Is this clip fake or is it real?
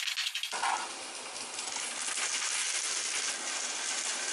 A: real